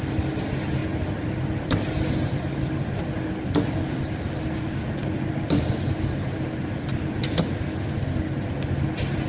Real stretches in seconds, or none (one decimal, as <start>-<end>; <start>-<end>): 0.0-9.3